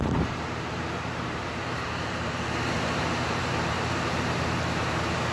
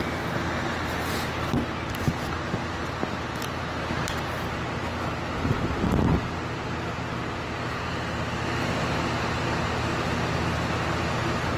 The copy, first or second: first